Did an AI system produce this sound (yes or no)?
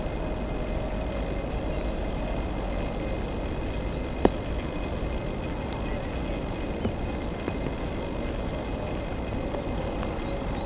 no